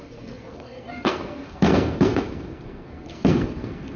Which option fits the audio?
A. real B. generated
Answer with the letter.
B